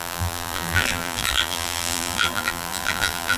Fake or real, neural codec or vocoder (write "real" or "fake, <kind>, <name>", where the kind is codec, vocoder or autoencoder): fake, vocoder, BigVGAN v2